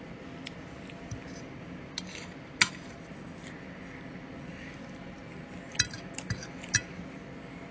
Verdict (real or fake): real